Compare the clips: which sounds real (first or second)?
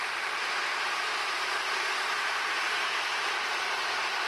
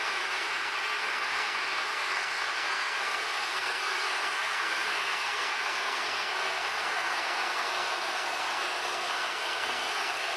first